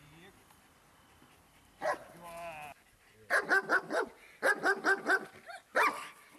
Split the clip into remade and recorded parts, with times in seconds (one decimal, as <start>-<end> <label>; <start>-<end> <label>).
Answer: 0.0-6.4 recorded